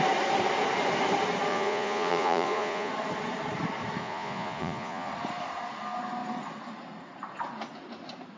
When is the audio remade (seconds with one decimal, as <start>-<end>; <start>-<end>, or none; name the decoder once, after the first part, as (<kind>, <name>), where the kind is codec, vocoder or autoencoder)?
1.5-2.9 (vocoder, Vocos); 4.0-5.1